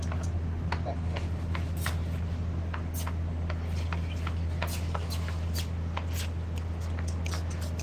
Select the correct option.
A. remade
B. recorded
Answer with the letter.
B